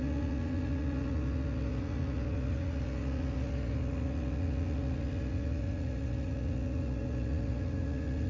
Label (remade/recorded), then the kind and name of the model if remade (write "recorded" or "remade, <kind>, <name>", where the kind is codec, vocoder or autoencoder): remade, vocoder, Vocos